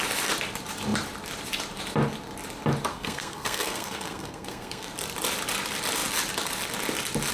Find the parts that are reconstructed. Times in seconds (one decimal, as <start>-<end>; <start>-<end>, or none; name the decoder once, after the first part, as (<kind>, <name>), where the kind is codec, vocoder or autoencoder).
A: 2.9-4.9 (codec, SNAC)